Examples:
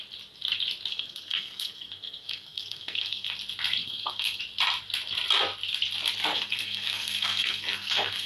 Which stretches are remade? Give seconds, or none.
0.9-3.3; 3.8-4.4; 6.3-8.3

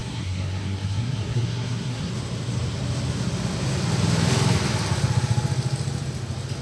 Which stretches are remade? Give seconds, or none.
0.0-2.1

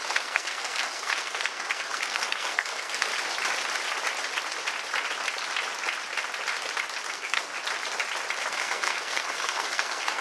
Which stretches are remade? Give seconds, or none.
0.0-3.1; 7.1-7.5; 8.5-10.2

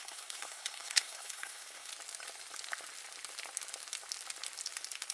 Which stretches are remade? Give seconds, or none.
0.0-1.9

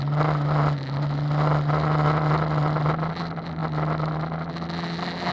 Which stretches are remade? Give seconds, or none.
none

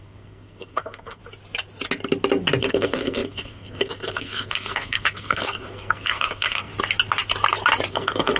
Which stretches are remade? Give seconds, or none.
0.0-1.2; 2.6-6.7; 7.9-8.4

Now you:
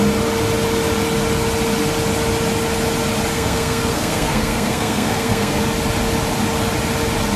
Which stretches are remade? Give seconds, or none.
3.3-5.6